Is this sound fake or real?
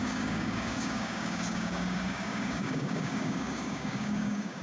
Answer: fake